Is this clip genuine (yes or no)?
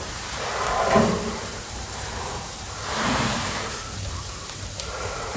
no